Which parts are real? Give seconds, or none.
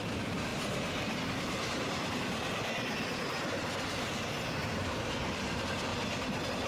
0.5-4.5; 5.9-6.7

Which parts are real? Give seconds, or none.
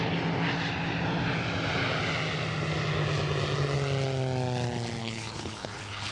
0.0-5.0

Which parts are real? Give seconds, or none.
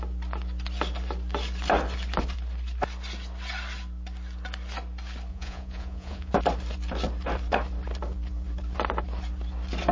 0.0-5.3; 6.3-9.9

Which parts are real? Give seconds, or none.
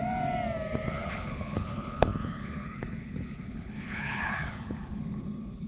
0.0-0.9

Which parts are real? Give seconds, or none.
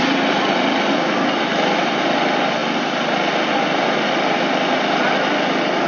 0.0-5.9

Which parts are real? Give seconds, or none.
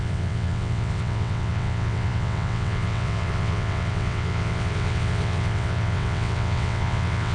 none